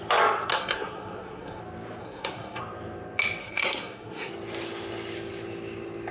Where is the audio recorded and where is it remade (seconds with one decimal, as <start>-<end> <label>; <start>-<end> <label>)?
0.0-0.5 recorded; 0.5-1.6 remade; 1.6-2.0 recorded; 2.0-2.6 remade; 2.6-3.4 recorded; 3.4-4.3 remade; 4.3-6.1 recorded